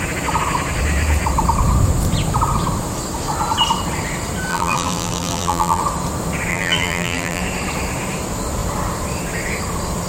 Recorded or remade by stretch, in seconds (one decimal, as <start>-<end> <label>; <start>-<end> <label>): 0.0-4.5 recorded; 4.5-5.8 remade; 5.8-6.5 recorded; 6.5-7.4 remade; 7.4-10.1 recorded